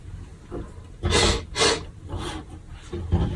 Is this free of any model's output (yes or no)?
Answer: yes